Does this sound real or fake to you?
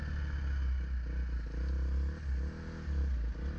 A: real